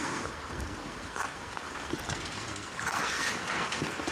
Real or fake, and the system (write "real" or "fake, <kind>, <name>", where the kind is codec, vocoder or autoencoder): fake, codec, SNAC